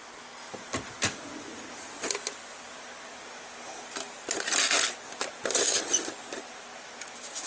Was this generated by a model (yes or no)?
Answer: no